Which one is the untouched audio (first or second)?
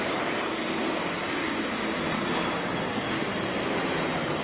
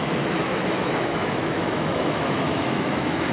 first